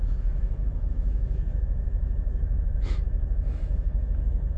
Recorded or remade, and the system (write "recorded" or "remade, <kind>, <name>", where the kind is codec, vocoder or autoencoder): remade, autoencoder, DAC-VAE